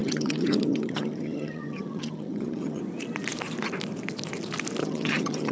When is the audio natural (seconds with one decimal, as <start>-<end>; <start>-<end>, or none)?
2.8-4.8

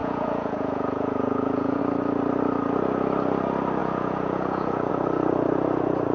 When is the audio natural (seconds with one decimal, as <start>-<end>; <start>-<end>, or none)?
1.8-3.8; 4.9-6.1

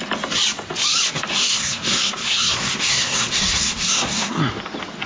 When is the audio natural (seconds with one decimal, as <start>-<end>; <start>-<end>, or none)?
0.0-1.3; 4.4-5.1